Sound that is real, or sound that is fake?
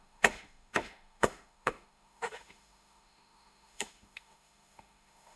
fake